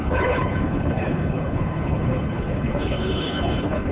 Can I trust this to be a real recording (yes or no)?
no